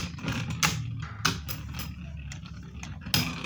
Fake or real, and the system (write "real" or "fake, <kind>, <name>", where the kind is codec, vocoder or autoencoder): real